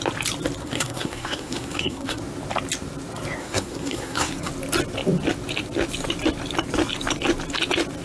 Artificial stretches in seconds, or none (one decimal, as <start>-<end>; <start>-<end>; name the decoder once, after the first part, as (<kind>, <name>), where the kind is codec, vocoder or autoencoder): 0.6-2.2 (codec, SNAC); 3.4-4.5